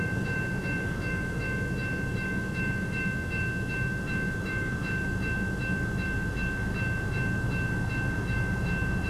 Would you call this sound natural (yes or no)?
no